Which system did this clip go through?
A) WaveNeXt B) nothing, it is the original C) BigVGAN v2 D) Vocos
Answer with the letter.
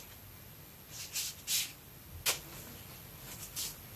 B